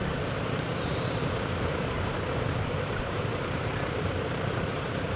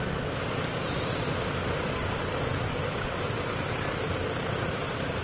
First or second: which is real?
second